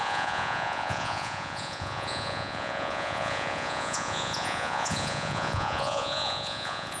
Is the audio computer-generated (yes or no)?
yes